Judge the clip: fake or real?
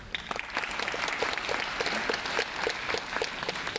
real